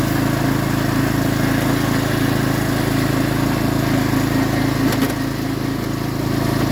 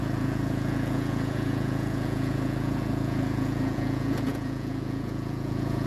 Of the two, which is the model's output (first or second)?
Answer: second